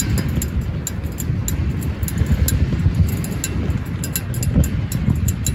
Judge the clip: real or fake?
real